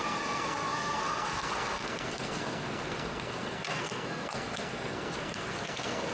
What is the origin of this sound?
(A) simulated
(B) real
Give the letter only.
A